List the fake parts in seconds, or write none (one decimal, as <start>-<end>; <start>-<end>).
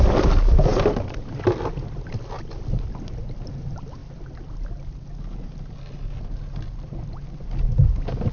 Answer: none